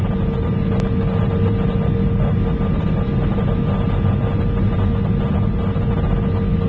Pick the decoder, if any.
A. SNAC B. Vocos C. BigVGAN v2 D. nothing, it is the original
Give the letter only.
D